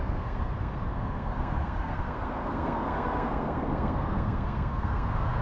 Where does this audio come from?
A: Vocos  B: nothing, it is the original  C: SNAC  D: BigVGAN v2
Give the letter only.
C